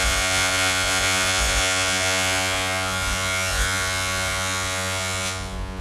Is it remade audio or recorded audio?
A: remade